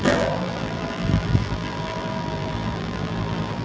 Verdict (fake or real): fake